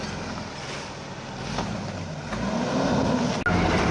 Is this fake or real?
real